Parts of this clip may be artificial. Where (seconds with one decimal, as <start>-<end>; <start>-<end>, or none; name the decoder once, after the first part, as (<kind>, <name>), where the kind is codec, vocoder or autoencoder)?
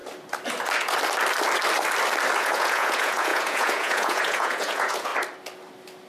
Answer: 2.4-5.1 (vocoder, Vocos)